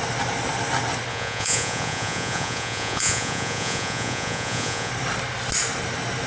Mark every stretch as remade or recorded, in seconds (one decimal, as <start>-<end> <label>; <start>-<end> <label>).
0.0-1.1 recorded; 1.1-4.9 remade; 4.9-6.3 recorded